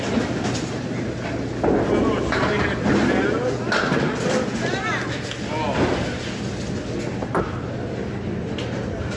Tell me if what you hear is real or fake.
real